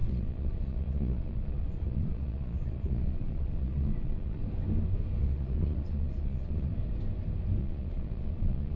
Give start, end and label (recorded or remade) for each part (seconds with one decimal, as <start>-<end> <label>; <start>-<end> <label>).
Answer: 0.0-4.4 remade; 4.4-5.2 recorded; 5.2-6.7 remade; 6.7-7.6 recorded; 7.6-8.8 remade